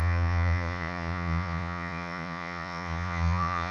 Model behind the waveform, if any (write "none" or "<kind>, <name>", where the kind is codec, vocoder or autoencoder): vocoder, Vocos